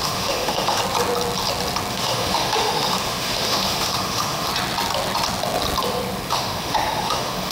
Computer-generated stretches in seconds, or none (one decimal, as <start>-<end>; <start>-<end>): 0.0-0.8; 1.9-4.5; 6.3-7.5

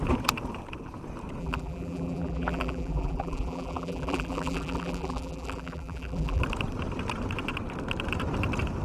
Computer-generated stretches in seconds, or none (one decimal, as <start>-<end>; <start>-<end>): 1.4-6.4

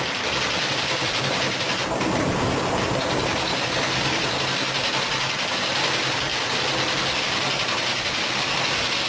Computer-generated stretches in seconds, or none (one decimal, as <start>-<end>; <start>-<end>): none